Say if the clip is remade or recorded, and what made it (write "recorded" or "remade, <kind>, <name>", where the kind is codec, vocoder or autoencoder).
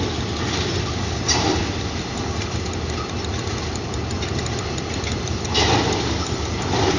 recorded